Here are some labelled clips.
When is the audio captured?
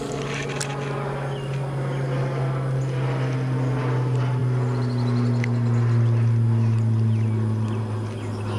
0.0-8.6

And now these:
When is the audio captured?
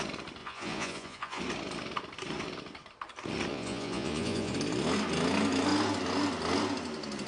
0.0-0.4; 1.4-3.5; 4.5-7.3